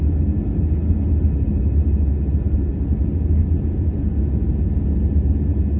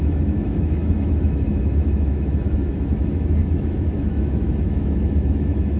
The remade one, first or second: second